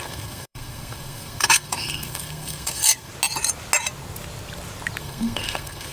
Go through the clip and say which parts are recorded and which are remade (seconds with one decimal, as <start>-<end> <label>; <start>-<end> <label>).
0.0-3.1 remade; 3.1-5.0 recorded; 5.0-5.9 remade